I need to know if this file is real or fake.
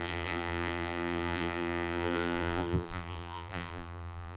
fake